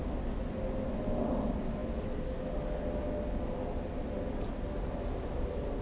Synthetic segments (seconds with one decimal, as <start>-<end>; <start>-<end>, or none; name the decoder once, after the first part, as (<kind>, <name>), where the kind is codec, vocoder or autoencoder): none